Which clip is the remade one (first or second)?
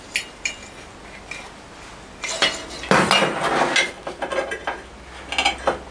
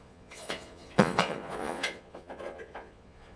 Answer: second